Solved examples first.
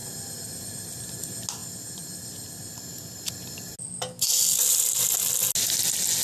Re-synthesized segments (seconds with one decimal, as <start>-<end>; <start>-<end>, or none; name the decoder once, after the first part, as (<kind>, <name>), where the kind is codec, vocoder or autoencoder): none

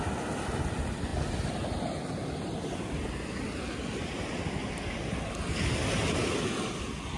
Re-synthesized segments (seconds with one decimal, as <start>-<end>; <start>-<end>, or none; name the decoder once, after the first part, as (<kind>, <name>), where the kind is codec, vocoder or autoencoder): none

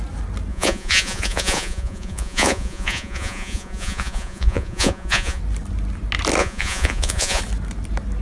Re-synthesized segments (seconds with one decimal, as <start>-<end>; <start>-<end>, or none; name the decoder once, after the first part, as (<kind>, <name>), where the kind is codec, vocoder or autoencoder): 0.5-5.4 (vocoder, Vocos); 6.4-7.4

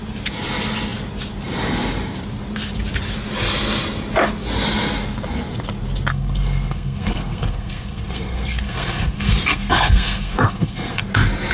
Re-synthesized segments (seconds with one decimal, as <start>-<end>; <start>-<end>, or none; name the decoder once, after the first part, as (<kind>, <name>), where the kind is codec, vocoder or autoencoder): 6.1-11.0 (codec, SNAC)

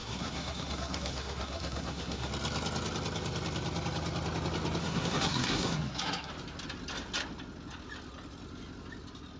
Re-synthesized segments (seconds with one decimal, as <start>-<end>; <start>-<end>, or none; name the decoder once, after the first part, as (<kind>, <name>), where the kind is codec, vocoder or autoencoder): 0.0-2.3 (codec, SNAC); 4.8-6.3

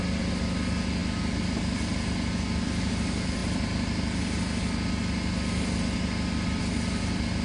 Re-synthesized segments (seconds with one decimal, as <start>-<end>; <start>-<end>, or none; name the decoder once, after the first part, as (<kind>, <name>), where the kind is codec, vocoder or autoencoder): none

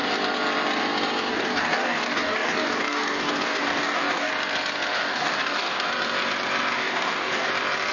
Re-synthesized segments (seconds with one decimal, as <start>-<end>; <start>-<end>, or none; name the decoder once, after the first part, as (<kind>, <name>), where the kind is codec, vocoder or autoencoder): 1.3-4.3 (codec, DAC); 4.9-5.9; 6.8-7.5